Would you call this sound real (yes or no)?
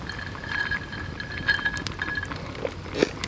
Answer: yes